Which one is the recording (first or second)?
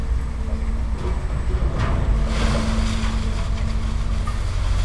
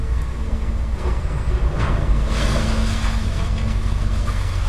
first